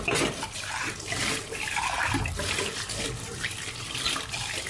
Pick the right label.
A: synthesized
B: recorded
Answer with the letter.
B